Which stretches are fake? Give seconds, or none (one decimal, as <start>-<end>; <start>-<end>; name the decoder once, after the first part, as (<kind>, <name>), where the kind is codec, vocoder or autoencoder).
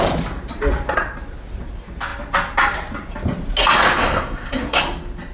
4.0-4.8 (codec, SNAC)